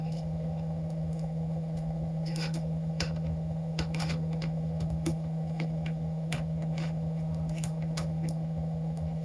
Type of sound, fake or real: fake